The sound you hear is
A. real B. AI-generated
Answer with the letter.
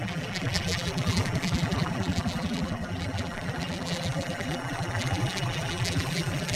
B